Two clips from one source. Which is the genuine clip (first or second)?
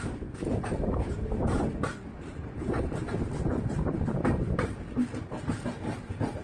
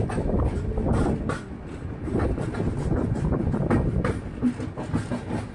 second